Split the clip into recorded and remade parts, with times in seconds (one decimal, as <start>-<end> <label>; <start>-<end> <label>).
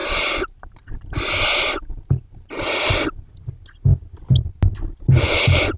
0.0-5.8 recorded